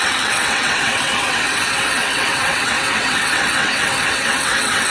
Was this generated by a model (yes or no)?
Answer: yes